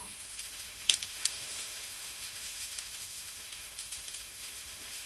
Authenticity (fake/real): fake